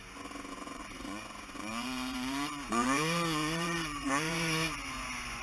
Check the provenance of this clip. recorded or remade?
remade